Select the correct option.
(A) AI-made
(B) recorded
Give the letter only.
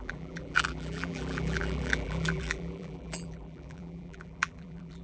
A